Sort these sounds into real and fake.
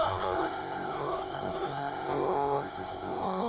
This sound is fake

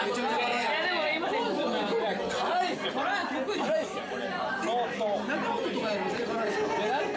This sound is real